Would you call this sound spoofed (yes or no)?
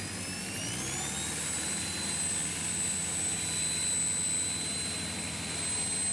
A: no